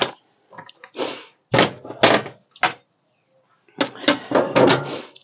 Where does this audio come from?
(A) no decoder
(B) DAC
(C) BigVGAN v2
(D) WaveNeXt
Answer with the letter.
A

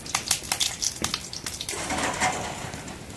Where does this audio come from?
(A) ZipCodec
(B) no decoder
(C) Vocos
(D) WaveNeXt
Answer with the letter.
B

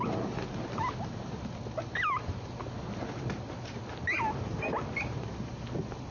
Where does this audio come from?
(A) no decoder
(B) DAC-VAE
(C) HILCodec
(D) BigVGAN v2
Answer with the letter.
A